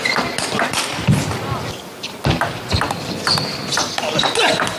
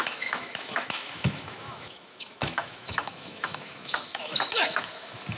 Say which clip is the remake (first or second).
second